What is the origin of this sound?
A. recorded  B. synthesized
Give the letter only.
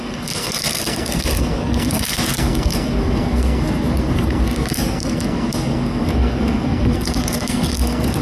B